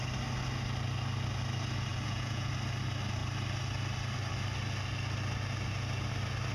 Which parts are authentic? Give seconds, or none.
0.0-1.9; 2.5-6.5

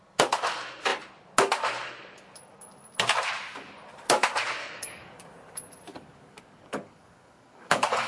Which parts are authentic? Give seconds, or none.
0.0-4.6; 5.3-5.9

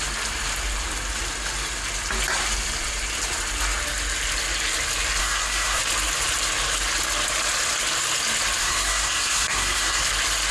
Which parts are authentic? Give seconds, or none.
0.0-5.2; 5.8-8.6; 10.0-10.5

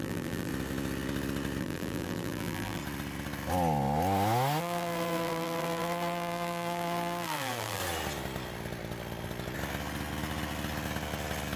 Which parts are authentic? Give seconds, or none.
0.5-1.6; 2.8-4.6; 7.8-11.6

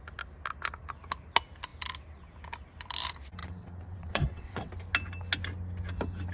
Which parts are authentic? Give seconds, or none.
0.0-3.4; 4.7-6.3

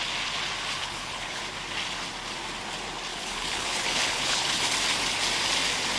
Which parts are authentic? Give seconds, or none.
0.0-0.8; 1.4-3.1; 4.6-6.0